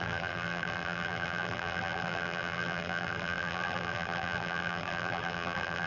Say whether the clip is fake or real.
fake